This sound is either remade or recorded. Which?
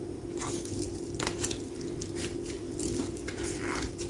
recorded